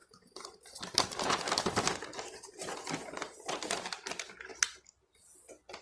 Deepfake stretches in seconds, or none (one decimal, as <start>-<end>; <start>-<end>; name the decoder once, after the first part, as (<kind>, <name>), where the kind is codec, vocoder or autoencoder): 0.0-3.5 (vocoder, BigVGAN v2); 4.5-5.8